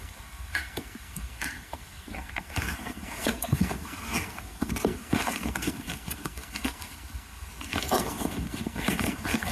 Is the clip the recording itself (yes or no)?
no